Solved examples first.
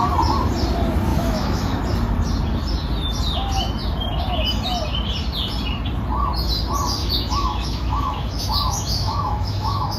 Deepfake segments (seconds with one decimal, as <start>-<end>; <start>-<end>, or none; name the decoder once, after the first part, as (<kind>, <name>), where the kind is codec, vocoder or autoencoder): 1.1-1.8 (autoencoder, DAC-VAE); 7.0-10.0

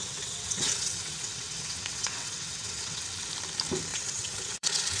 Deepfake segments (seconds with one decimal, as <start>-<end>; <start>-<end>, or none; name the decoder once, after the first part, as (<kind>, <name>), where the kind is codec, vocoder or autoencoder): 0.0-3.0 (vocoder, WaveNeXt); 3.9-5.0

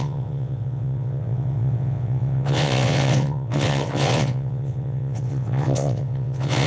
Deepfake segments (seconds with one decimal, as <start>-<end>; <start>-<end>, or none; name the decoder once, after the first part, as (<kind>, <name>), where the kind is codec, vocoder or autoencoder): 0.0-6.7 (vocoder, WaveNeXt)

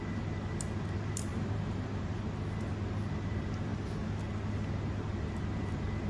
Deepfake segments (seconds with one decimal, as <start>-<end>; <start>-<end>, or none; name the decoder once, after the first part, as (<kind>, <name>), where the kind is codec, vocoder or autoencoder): 1.3-2.2 (vocoder, BigVGAN v2)

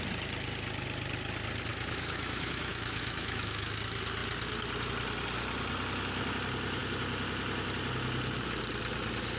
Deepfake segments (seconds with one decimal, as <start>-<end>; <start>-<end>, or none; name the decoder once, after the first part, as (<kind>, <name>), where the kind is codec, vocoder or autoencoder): 1.7-3.8 (autoencoder, DAC-VAE)

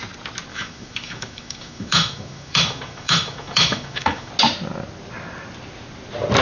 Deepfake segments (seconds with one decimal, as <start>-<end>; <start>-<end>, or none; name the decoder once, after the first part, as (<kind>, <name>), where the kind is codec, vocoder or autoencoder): 0.5-4.3 (autoencoder, DAC-VAE)

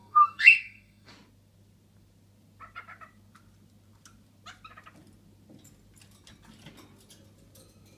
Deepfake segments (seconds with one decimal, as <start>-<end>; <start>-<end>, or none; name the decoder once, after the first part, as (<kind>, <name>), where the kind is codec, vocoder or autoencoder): 0.0-1.1 (codec, SNAC)